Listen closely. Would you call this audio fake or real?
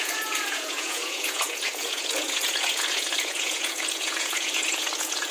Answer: fake